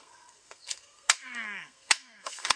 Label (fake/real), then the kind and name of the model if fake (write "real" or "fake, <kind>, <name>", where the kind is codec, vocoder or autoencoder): fake, codec, SNAC